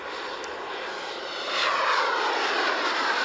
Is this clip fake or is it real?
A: real